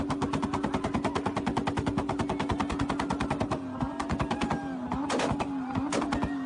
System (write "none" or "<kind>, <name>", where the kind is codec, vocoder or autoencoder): none